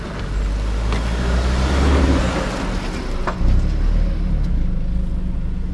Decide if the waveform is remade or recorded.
recorded